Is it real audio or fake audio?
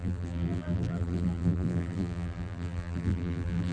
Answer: fake